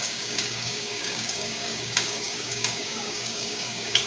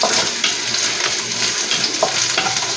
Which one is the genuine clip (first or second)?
second